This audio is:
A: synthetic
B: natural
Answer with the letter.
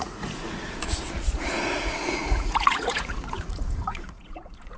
A